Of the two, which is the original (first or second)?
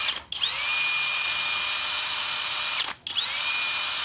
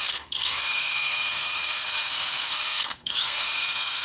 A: first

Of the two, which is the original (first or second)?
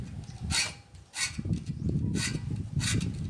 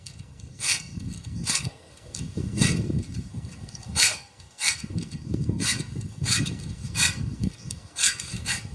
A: first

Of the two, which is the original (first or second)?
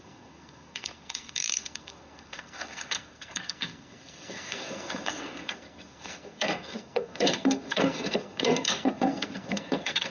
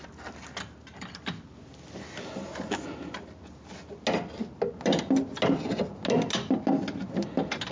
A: second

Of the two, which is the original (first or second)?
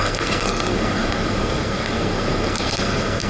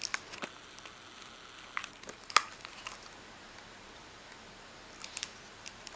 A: second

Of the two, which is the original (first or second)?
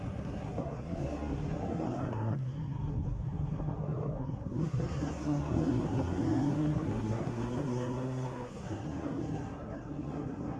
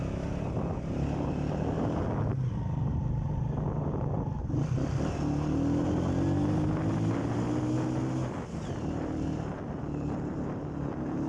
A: second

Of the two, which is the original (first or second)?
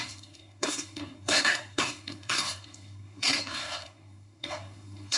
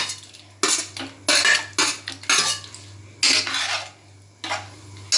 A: second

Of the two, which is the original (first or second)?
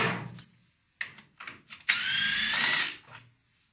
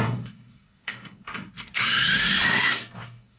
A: first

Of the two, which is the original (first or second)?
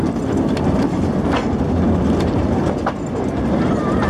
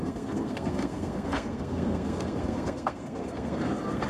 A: first